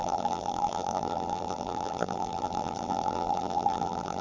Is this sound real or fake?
fake